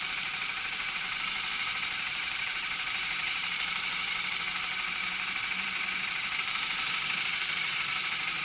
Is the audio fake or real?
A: fake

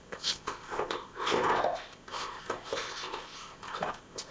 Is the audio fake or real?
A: fake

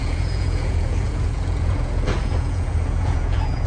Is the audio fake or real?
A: fake